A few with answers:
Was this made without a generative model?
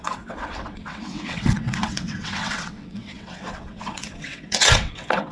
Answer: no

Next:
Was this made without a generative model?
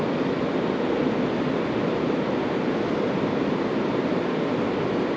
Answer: yes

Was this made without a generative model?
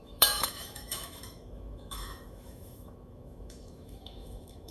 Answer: no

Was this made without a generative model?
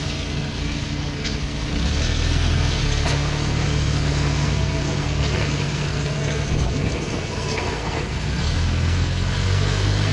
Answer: no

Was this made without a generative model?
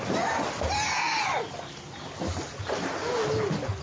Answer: yes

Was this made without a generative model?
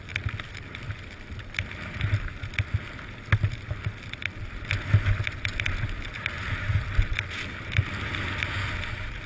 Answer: yes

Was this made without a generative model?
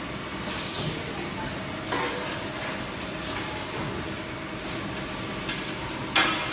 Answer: yes